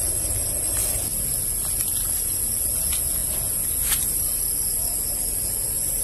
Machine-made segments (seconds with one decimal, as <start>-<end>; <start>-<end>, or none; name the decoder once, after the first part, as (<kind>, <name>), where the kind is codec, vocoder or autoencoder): none